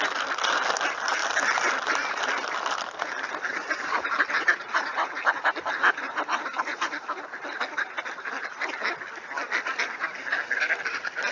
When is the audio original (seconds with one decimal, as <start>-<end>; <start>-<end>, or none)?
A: 0.0-11.3